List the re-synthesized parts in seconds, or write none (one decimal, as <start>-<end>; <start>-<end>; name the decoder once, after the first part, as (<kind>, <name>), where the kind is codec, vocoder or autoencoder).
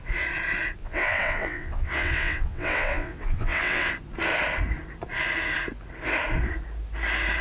0.8-3.9 (vocoder, WaveNeXt)